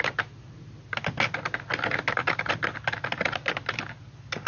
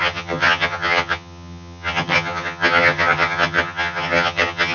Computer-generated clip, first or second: second